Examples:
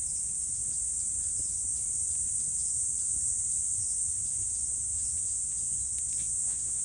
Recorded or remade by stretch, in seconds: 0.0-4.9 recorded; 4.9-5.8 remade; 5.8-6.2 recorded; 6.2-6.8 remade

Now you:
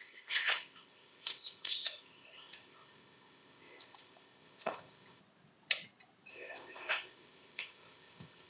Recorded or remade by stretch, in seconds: 0.0-5.2 remade; 5.2-6.3 recorded; 6.3-8.5 remade